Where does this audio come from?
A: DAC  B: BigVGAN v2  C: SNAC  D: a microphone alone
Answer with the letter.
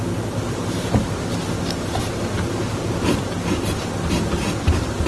D